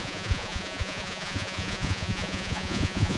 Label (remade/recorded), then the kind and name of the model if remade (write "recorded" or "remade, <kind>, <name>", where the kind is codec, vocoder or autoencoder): remade, vocoder, Vocos